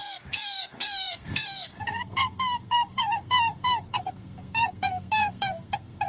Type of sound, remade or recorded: remade